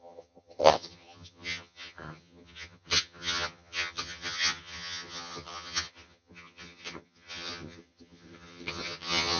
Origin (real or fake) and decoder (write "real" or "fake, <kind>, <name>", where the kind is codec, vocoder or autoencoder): fake, vocoder, HiFi-GAN